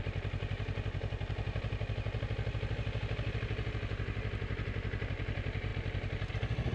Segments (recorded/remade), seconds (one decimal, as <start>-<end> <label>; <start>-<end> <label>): 0.0-6.7 recorded